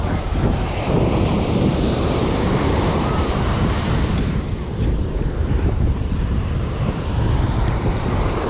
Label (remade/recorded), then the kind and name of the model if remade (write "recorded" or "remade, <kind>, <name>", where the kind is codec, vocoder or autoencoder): remade, vocoder, BigVGAN v2